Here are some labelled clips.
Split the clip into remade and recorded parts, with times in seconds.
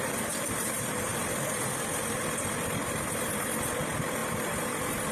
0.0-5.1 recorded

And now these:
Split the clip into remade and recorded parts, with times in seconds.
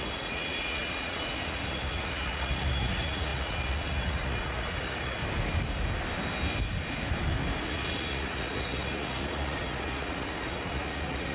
0.0-5.2 remade; 5.2-7.6 recorded; 7.6-11.3 remade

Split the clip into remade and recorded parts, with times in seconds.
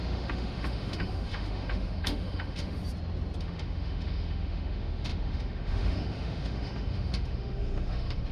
0.0-2.8 remade; 2.8-3.4 recorded; 3.4-8.3 remade